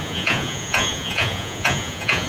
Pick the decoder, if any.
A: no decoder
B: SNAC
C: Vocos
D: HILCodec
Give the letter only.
C